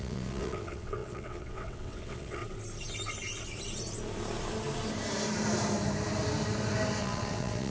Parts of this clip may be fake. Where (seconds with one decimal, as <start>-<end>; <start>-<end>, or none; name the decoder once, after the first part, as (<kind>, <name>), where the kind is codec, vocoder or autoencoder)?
0.0-2.4 (vocoder, WaveNeXt); 7.0-7.7